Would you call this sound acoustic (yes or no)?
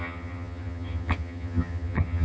no